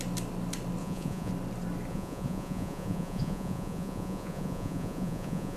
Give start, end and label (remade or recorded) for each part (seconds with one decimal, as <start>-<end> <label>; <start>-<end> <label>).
0.0-0.8 recorded; 0.8-1.3 remade; 1.3-1.9 recorded; 1.9-5.6 remade